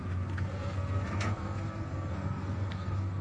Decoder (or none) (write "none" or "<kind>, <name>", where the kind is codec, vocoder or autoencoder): codec, SNAC